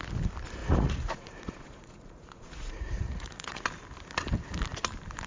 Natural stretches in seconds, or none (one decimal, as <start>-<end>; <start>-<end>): 0.0-0.6; 3.6-5.3